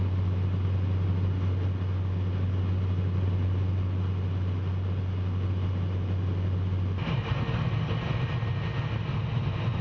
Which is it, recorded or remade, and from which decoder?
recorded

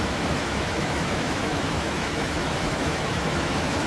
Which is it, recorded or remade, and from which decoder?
remade, autoencoder, DAC-VAE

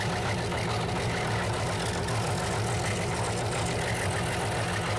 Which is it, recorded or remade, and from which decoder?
recorded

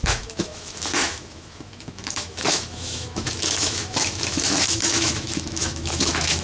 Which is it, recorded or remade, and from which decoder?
remade, autoencoder, DAC-VAE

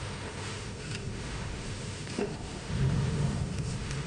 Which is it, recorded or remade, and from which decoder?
remade, autoencoder, DAC-VAE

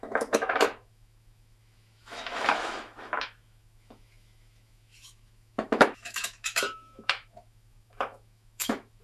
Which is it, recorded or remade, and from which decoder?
remade, autoencoder, DAC-VAE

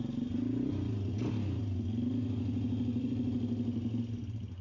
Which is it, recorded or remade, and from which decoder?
recorded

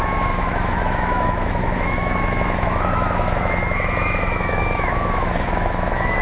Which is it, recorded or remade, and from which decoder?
remade, autoencoder, DAC-VAE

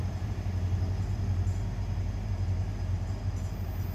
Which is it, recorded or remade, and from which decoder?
recorded